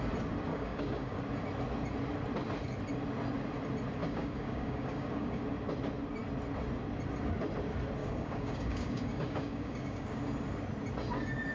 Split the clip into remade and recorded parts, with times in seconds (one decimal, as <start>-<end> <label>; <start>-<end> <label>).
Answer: 0.0-0.5 recorded; 0.5-1.2 remade; 1.2-4.0 recorded; 4.0-5.4 remade; 5.4-8.0 recorded; 8.0-10.2 remade; 10.2-11.5 recorded